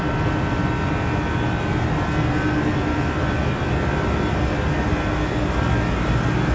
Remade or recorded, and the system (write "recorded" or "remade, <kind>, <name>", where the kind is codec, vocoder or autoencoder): recorded